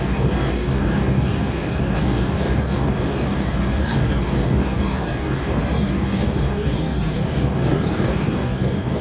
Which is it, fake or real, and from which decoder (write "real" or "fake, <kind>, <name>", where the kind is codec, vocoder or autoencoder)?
fake, codec, DAC